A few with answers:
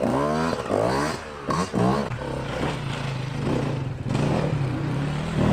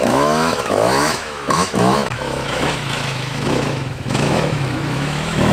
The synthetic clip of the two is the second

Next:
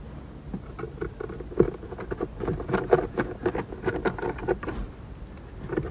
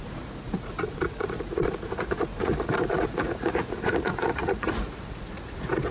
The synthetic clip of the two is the second